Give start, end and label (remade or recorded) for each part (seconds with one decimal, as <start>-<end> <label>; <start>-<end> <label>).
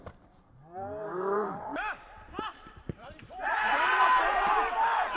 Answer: 0.0-1.0 recorded; 1.0-4.1 remade; 4.1-5.2 recorded